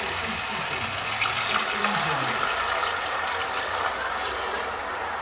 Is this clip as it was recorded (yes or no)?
yes